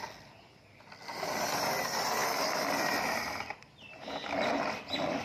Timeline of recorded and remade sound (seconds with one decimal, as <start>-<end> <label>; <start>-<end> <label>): 0.0-5.2 recorded